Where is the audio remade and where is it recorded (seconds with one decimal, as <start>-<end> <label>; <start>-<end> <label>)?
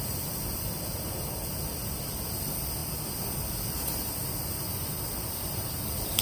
0.0-1.8 remade; 1.8-2.4 recorded; 2.4-6.2 remade